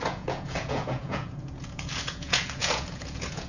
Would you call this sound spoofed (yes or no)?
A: yes